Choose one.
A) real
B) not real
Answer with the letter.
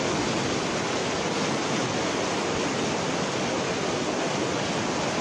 A